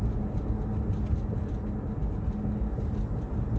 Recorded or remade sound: recorded